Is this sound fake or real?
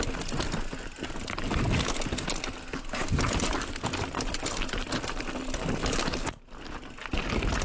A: real